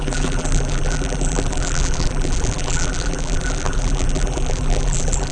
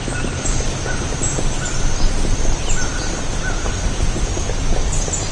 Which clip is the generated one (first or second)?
first